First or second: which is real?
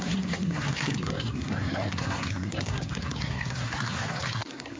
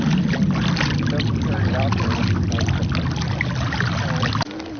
second